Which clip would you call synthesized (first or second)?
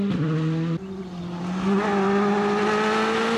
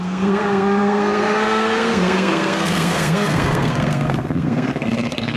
second